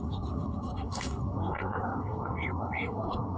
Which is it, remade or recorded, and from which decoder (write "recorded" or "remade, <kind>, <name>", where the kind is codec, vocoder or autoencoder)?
remade, codec, SNAC